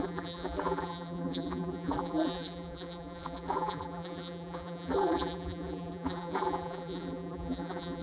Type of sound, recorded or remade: remade